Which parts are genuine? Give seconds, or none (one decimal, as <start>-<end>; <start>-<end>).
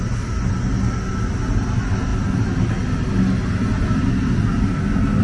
0.0-5.2